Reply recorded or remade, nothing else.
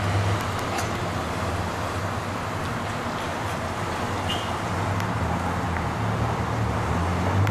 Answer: recorded